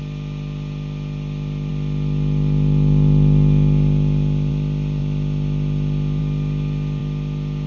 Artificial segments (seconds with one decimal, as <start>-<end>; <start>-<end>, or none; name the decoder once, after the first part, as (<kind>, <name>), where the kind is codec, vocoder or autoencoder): none